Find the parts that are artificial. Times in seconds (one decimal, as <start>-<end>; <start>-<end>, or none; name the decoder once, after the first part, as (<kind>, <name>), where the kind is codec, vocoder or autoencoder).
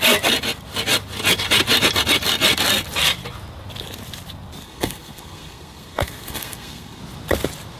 4.6-7.0 (codec, SNAC)